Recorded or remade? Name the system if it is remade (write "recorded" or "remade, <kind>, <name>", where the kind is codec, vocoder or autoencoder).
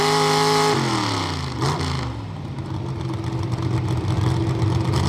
recorded